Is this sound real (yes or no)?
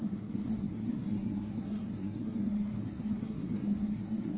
no